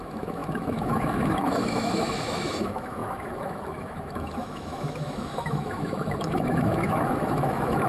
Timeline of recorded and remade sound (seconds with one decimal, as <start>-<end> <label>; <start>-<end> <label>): 0.0-7.9 remade